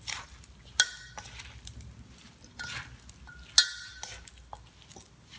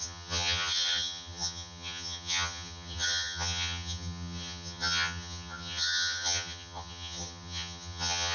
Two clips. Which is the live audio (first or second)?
first